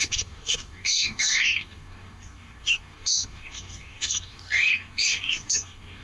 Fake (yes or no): yes